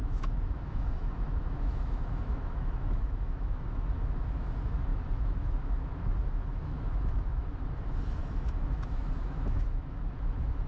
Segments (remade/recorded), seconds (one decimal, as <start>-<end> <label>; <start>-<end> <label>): 0.0-10.7 remade